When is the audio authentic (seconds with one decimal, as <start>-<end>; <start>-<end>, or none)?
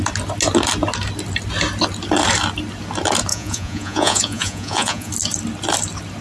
0.0-3.3; 5.1-6.2